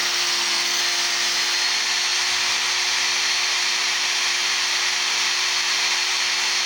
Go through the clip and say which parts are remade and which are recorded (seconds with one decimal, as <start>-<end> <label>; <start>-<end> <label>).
0.0-0.8 remade; 0.8-6.7 recorded